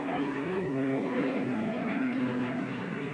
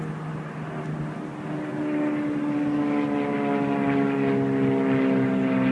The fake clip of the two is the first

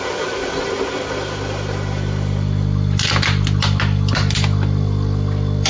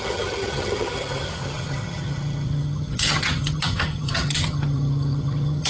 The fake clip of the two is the second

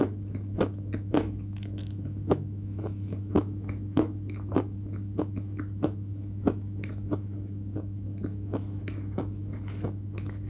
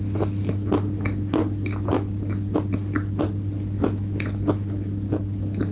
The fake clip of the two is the first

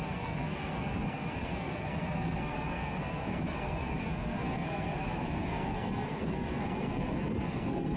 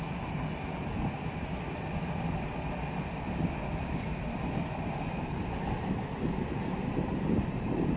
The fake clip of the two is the first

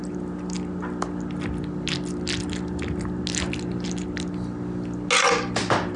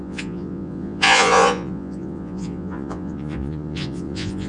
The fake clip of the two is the second